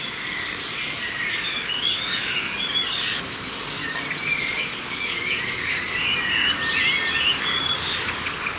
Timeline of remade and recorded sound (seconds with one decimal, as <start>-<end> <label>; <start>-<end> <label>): 0.0-3.8 remade; 3.8-4.5 recorded; 4.5-6.0 remade; 6.0-7.4 recorded; 7.4-8.6 remade